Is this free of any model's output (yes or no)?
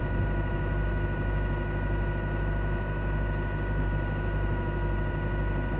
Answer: yes